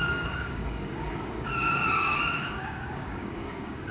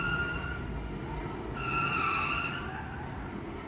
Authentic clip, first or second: second